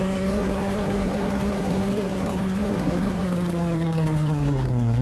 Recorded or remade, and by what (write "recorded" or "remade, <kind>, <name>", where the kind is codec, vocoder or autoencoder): remade, codec, SNAC